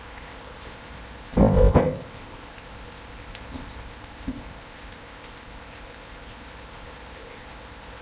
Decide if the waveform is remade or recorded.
remade